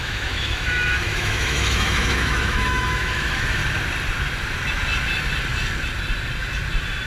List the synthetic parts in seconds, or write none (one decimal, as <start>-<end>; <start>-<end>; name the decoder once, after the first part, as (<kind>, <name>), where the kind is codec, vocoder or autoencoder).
0.0-3.6 (autoencoder, DAC-VAE)